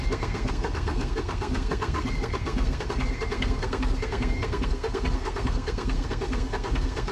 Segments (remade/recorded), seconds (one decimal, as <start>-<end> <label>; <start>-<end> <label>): 0.0-7.1 remade